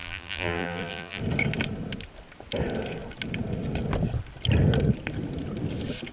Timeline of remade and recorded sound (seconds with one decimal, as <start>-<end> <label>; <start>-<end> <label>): 0.0-1.2 remade; 1.2-6.1 recorded